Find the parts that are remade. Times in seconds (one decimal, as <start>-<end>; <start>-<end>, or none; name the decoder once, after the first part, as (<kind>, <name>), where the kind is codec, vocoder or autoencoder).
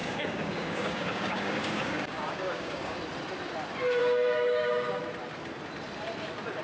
0.0-3.0 (codec, DAC); 4.0-5.0